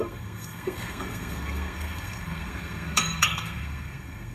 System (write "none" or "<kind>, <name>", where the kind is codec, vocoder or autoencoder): codec, SNAC